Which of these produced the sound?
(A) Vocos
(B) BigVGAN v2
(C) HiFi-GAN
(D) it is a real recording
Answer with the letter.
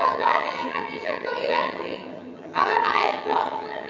C